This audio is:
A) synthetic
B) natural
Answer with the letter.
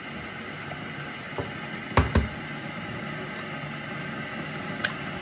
B